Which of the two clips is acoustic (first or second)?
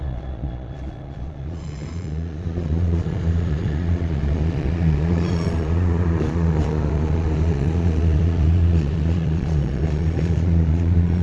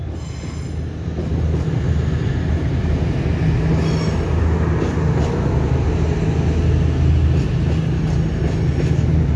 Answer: second